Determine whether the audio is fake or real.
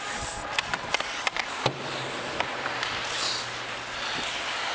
real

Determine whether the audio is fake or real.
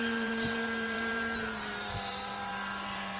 fake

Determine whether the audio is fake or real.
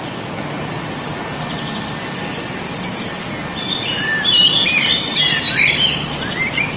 real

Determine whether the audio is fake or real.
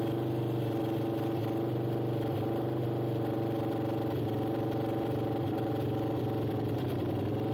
real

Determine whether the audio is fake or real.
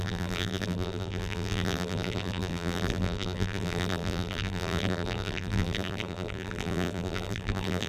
fake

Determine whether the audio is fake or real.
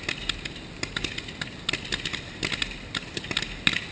real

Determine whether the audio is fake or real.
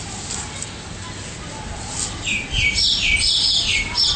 real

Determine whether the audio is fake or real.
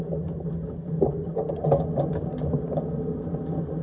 real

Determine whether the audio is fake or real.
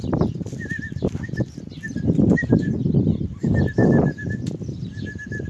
real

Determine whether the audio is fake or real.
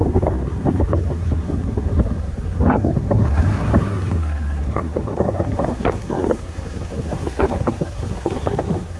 fake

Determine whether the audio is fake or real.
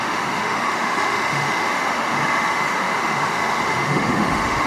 fake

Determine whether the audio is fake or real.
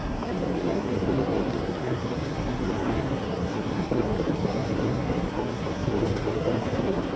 fake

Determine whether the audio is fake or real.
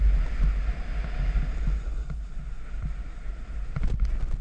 real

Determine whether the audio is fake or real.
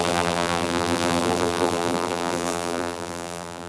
fake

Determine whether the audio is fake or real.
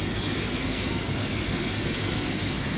fake